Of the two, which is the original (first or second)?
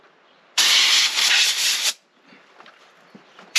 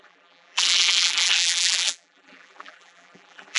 first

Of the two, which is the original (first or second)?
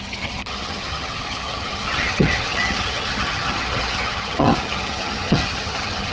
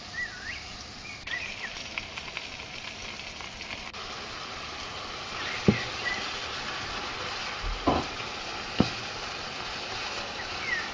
second